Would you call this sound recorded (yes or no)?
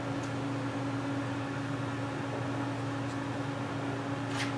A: yes